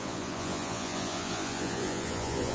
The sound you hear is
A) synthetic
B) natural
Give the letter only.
A